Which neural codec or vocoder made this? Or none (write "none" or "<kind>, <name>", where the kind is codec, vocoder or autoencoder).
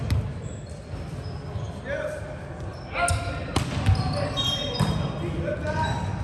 none